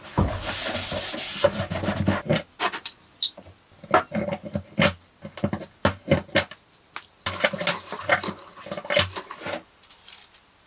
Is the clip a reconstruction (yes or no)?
no